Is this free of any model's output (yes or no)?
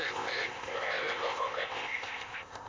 no